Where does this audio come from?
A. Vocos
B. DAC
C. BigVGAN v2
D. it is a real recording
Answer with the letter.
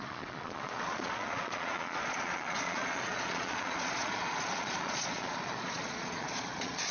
A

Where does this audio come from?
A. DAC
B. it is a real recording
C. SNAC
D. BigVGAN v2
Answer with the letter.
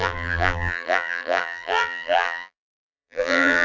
D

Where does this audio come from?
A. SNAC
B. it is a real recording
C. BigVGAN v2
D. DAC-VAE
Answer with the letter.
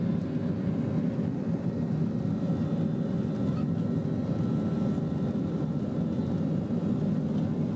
B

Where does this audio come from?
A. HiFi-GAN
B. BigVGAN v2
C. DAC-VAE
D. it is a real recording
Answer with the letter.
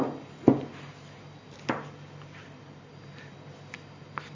D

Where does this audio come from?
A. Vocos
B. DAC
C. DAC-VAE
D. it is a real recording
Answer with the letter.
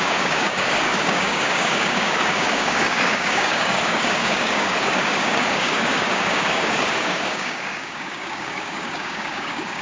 B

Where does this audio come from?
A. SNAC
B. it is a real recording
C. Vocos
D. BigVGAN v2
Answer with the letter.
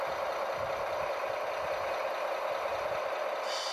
B